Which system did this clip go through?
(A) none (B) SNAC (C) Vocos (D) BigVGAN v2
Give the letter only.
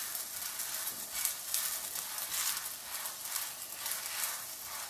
A